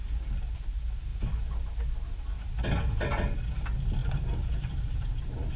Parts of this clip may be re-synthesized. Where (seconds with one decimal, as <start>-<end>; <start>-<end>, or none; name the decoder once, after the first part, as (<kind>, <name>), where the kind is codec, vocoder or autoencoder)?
4.0-5.6 (vocoder, BigVGAN v2)